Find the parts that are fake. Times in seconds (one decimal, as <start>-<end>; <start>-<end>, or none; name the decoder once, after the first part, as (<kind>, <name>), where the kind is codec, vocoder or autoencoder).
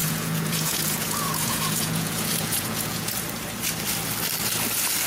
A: 0.0-3.1 (vocoder, Vocos)